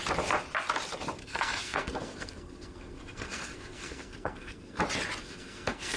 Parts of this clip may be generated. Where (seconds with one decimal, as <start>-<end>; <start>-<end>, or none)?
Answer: 1.2-4.8; 5.2-6.0